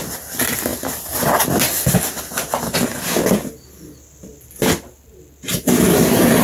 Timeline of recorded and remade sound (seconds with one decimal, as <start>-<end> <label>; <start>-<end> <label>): 0.0-6.4 recorded